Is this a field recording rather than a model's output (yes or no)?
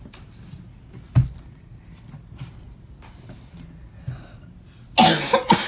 yes